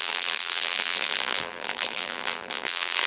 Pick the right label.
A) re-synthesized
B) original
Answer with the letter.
A